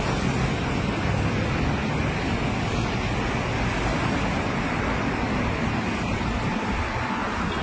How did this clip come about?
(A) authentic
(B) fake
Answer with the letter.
A